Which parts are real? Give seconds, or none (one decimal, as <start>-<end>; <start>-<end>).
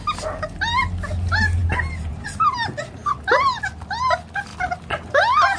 0.0-5.6